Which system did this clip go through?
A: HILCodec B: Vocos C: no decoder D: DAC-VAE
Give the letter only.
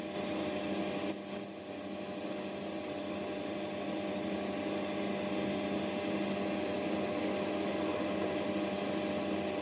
C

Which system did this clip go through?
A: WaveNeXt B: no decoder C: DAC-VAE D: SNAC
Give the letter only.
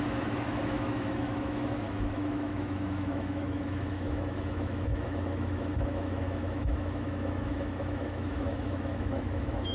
C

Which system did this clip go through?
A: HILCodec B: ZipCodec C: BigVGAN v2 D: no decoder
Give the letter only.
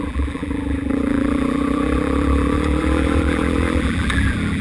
C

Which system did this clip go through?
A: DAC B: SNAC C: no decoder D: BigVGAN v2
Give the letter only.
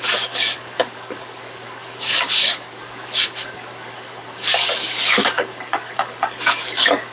A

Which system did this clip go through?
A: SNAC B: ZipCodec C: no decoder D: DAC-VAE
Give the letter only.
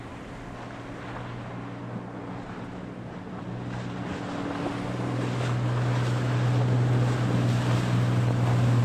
C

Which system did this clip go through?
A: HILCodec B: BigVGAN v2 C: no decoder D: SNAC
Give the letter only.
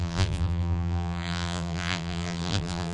B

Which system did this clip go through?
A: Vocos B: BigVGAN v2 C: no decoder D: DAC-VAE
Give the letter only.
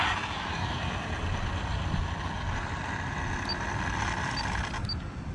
C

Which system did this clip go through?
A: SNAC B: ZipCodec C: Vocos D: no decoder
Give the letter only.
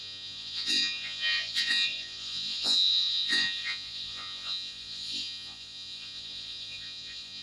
C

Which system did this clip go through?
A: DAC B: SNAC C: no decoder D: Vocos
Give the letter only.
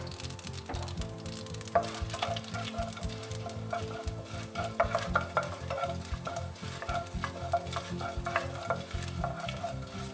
C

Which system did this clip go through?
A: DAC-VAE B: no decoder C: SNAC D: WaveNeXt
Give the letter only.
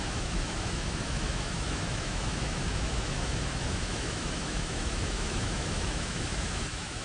A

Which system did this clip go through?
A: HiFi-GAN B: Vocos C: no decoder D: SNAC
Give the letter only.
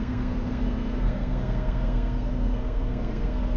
D